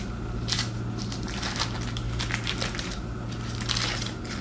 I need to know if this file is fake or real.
real